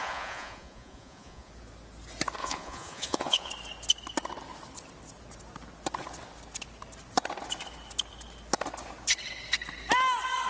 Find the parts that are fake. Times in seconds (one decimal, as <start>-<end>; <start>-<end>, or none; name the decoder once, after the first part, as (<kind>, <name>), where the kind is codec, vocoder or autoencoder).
0.0-1.5 (vocoder, Vocos); 2.4-3.5